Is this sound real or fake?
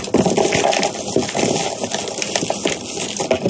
real